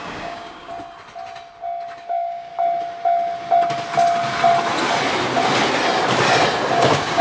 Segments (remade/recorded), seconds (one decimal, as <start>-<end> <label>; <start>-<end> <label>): 0.0-0.7 remade; 0.7-2.1 recorded; 2.1-2.5 remade; 2.5-6.7 recorded; 6.7-7.2 remade